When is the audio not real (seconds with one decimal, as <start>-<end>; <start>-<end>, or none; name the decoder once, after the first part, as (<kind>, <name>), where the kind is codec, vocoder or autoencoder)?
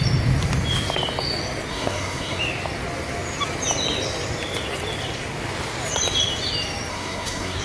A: 1.7-2.4 (codec, SNAC); 6.9-7.6